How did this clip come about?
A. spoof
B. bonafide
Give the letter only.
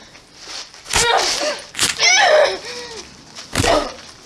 A